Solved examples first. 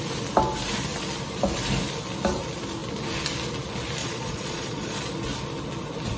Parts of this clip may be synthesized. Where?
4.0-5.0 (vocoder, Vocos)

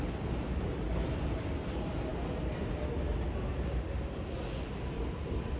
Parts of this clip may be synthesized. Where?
none

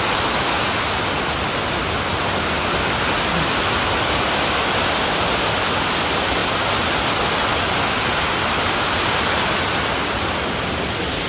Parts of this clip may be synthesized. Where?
none

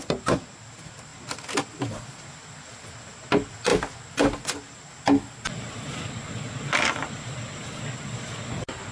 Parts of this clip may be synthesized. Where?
none